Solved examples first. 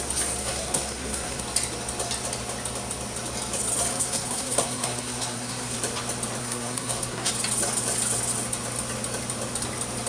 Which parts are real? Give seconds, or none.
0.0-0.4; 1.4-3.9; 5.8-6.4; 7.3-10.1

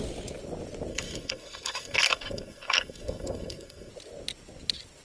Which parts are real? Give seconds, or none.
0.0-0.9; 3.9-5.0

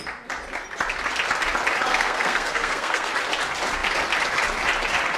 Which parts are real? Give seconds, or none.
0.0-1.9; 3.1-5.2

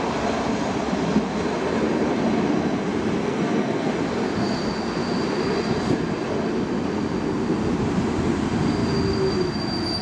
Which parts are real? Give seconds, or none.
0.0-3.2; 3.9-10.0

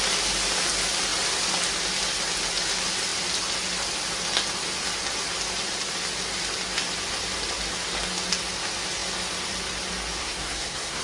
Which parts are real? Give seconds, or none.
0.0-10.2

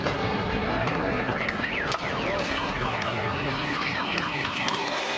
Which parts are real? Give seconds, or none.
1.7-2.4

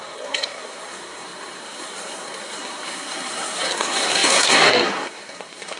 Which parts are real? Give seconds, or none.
none

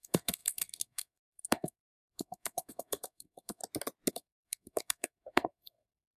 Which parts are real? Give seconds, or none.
3.6-4.1